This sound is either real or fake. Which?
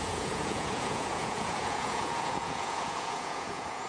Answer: fake